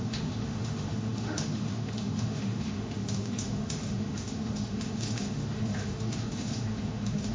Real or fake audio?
fake